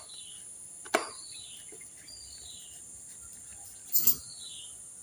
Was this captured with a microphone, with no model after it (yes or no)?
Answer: no